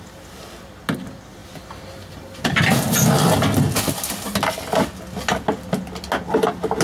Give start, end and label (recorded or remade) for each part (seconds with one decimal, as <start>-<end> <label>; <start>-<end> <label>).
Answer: 0.0-6.8 recorded